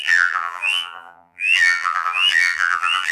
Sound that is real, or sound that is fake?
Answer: fake